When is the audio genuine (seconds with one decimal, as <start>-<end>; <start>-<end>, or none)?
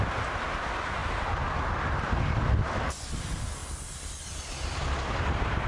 0.0-5.7